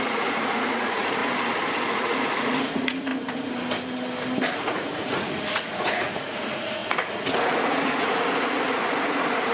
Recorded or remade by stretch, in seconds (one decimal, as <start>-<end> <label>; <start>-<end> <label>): 0.0-1.2 remade; 1.2-1.7 recorded; 1.7-3.1 remade; 3.1-4.5 recorded; 4.5-9.5 remade

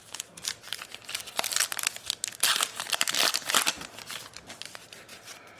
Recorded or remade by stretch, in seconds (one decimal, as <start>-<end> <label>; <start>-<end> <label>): 0.0-0.8 remade; 0.8-2.3 recorded; 2.3-3.2 remade; 3.2-5.1 recorded; 5.1-5.6 remade

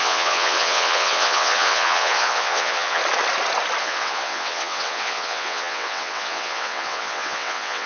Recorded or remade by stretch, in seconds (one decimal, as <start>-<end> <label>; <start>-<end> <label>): 0.0-3.0 remade; 3.0-3.8 recorded; 3.8-7.9 remade

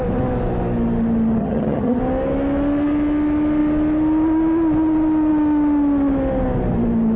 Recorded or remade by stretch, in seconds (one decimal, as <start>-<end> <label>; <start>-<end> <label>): 0.0-1.4 recorded; 1.4-2.0 remade; 2.0-7.2 recorded